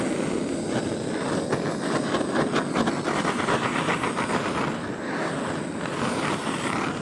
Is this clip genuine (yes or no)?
yes